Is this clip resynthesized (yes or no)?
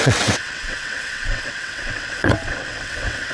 yes